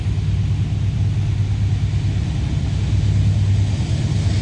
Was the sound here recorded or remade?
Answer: recorded